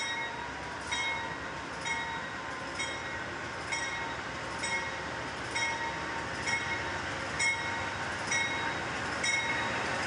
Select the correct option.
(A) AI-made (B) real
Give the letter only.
B